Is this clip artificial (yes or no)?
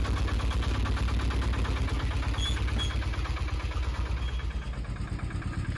no